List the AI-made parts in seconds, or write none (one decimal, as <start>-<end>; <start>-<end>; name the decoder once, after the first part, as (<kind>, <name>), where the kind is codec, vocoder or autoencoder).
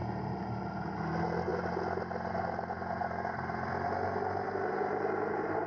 none